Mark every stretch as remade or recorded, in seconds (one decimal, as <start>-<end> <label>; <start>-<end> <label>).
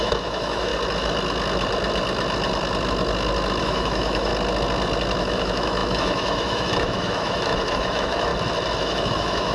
0.0-0.7 remade; 0.7-3.6 recorded; 3.6-4.3 remade; 4.3-5.2 recorded; 5.2-8.3 remade; 8.3-8.8 recorded; 8.8-9.5 remade